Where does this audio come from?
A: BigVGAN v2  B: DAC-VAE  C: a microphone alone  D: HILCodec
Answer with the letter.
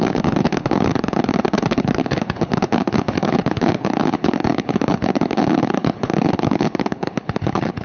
D